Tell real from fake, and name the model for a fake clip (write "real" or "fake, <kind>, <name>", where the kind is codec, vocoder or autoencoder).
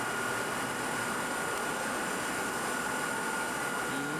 real